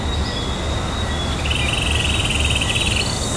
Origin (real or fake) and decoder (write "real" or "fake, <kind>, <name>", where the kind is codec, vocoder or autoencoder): real